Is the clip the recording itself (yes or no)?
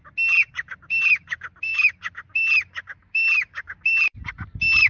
yes